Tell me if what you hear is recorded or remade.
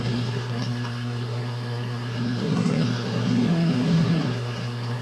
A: remade